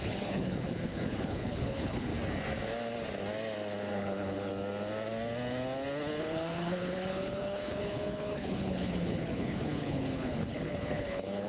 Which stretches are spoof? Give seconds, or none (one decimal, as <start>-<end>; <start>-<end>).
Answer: 0.0-2.1; 3.9-4.5; 6.2-11.5